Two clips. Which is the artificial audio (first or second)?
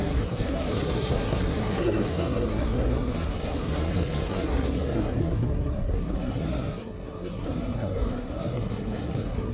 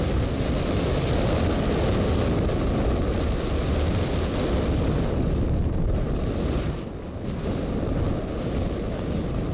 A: first